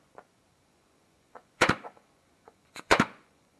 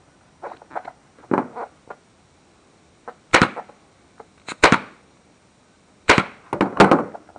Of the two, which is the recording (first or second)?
second